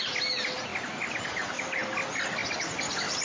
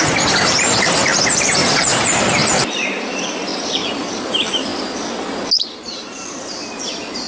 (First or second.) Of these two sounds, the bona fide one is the first